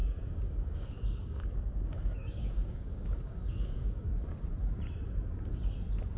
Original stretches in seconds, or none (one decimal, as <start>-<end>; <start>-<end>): 4.1-6.2